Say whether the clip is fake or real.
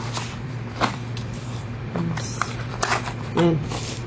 fake